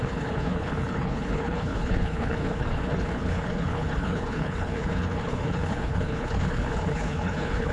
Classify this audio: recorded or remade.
remade